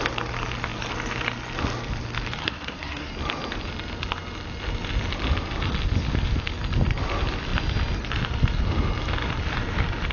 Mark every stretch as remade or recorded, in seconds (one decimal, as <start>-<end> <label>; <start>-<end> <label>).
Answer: 0.0-2.4 recorded; 2.4-3.1 remade; 3.1-10.1 recorded